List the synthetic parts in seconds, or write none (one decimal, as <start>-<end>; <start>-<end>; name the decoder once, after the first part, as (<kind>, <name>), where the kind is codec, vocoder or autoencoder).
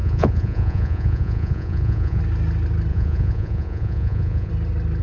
0.0-2.2 (vocoder, Vocos); 2.9-4.5